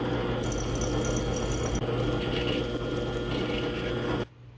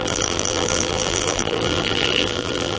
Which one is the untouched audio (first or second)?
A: first